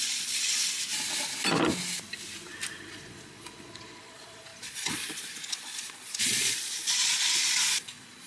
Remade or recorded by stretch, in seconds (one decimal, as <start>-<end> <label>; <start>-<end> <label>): 0.0-0.6 remade; 0.6-2.8 recorded; 2.8-8.3 remade